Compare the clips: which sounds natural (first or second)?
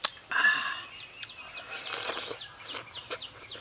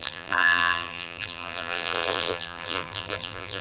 first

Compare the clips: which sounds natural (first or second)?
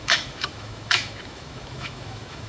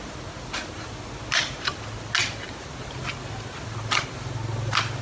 second